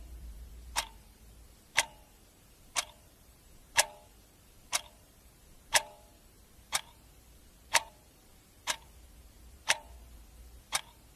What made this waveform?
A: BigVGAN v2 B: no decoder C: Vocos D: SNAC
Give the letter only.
A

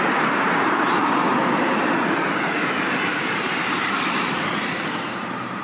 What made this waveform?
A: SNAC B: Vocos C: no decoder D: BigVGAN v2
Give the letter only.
D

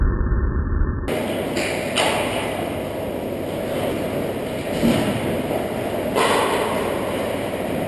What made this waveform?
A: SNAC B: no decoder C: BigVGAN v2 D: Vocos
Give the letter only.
B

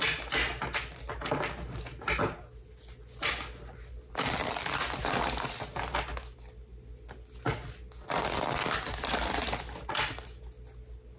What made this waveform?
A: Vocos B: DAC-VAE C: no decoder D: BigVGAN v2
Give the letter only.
C